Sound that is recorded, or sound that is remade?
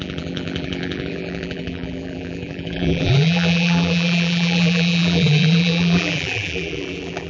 remade